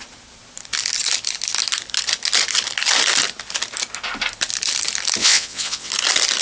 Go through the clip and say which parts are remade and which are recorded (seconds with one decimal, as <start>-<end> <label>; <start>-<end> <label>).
0.0-5.2 recorded; 5.2-5.9 remade; 5.9-6.4 recorded

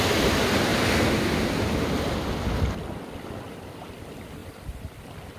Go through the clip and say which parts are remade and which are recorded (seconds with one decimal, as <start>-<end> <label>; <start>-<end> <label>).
0.0-5.4 recorded

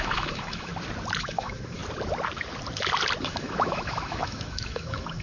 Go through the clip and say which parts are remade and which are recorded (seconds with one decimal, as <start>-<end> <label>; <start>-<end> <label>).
0.0-0.7 remade; 0.7-1.2 recorded; 1.2-1.8 remade; 1.8-3.2 recorded; 3.2-5.2 remade